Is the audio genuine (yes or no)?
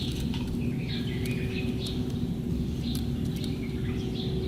yes